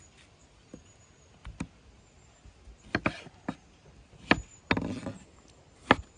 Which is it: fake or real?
real